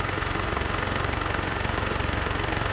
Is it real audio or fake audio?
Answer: fake